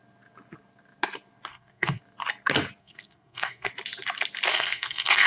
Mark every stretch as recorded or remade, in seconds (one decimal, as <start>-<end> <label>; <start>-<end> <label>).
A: 0.0-1.5 recorded; 1.5-2.0 remade; 2.0-2.8 recorded; 2.8-3.7 remade; 3.7-4.5 recorded; 4.5-5.3 remade